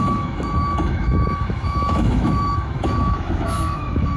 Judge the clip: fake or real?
fake